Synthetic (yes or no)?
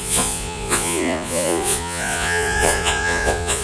yes